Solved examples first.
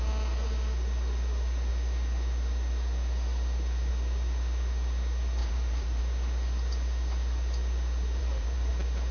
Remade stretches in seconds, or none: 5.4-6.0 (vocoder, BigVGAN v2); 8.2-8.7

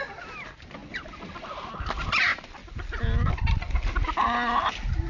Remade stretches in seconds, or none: none

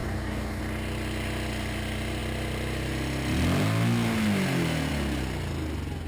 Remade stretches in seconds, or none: 0.0-0.6 (codec, DAC)

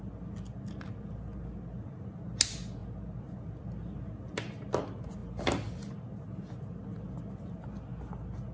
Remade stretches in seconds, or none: none